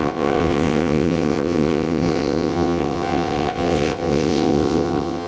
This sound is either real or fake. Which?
fake